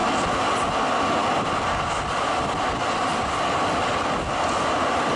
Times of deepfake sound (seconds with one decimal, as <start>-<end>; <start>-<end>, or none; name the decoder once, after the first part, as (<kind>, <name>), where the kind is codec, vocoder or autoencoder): none

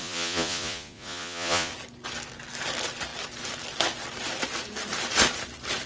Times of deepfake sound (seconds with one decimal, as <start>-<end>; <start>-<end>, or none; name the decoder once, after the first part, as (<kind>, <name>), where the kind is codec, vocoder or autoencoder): 0.0-1.7 (vocoder, Vocos)